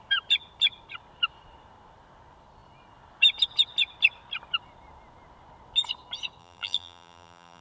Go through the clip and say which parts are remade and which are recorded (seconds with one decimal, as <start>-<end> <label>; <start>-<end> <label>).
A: 0.0-6.4 recorded; 6.4-7.6 remade